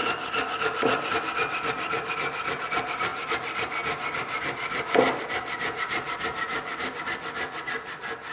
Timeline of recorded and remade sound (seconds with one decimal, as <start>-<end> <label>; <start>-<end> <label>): 0.0-8.3 recorded

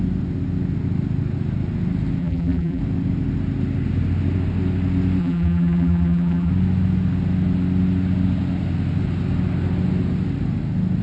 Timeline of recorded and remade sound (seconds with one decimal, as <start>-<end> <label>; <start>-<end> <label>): 0.0-2.2 recorded; 2.2-2.8 remade; 2.8-5.2 recorded; 5.2-6.5 remade; 6.5-11.0 recorded

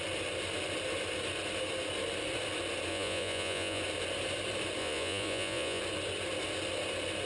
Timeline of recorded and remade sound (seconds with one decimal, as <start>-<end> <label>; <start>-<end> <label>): 0.0-2.9 recorded; 2.9-3.8 remade; 3.8-4.8 recorded; 4.8-5.8 remade; 5.8-7.3 recorded

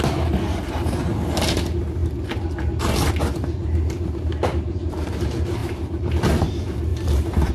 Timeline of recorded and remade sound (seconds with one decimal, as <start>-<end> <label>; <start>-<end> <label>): 0.0-3.6 recorded; 3.6-5.1 remade; 5.1-5.6 recorded; 5.6-6.1 remade; 6.1-6.9 recorded; 6.9-7.5 remade

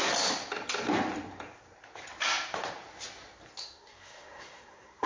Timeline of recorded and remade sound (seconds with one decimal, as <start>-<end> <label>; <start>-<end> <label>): 0.0-3.6 recorded; 3.6-5.1 remade

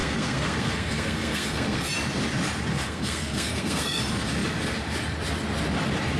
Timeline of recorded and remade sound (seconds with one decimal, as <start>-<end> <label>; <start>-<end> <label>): 0.0-1.9 remade; 1.9-2.7 recorded; 2.7-4.0 remade; 4.0-6.2 recorded

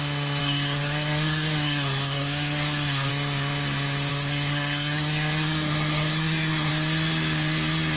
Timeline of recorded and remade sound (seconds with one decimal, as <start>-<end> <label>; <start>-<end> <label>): 0.0-0.4 recorded; 0.4-3.1 remade; 3.1-4.1 recorded; 4.1-6.7 remade; 6.7-8.0 recorded

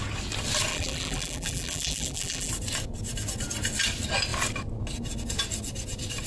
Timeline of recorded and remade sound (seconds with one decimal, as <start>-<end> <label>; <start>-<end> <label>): 0.0-0.7 recorded; 0.7-2.5 remade; 2.5-6.3 recorded